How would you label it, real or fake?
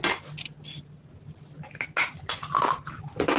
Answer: real